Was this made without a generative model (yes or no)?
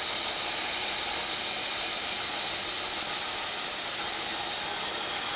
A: yes